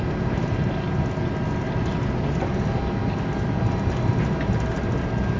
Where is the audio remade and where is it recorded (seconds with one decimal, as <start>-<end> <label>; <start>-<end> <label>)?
0.0-5.4 recorded